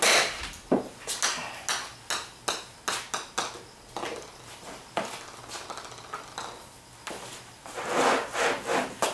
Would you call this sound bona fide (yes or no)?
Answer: yes